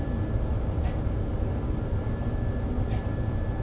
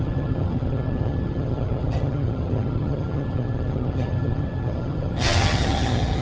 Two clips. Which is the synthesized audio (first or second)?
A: second